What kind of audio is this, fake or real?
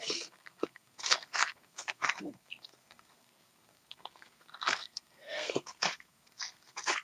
fake